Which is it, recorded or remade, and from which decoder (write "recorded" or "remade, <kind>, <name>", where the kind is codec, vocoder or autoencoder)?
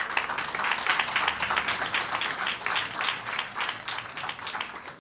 recorded